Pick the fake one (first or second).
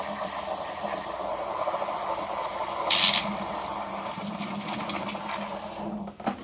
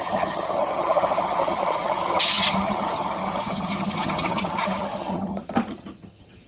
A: second